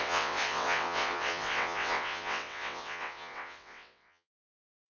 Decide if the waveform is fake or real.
fake